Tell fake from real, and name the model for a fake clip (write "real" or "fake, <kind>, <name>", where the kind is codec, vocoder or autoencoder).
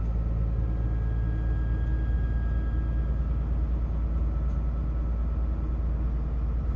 real